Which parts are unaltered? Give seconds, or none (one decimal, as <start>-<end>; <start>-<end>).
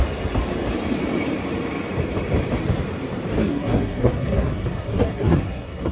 0.0-3.4